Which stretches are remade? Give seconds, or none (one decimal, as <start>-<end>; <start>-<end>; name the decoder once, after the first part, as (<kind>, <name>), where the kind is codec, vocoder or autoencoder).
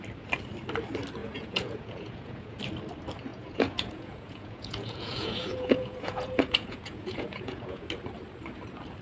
1.2-2.6 (vocoder, Vocos); 3.3-7.9